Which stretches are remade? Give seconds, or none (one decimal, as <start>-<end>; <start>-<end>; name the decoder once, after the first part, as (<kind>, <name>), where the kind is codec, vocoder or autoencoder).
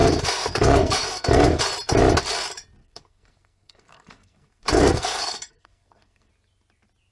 0.0-1.6 (codec, SNAC); 2.8-6.3